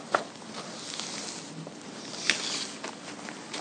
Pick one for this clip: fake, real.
real